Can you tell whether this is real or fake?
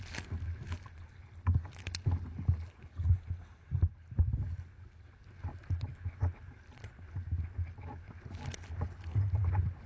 real